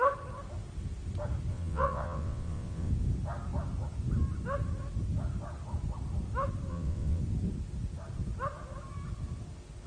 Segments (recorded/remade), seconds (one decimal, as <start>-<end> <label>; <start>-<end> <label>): 0.0-1.5 recorded; 1.5-2.9 remade; 2.9-6.7 recorded; 6.7-7.2 remade; 7.2-9.9 recorded